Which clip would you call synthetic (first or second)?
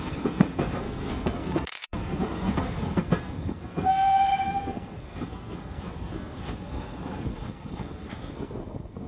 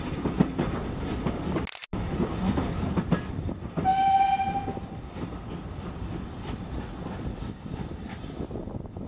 first